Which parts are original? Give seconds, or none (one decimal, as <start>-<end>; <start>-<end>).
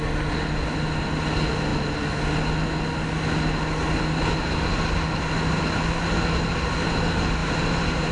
0.0-7.4